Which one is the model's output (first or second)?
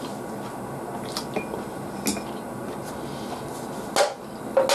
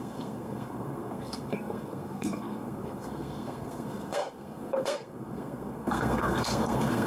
second